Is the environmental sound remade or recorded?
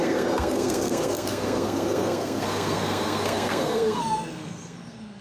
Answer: remade